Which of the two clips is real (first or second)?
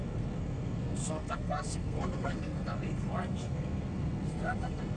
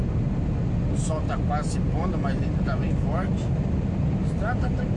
second